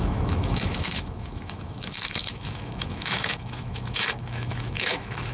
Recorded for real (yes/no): no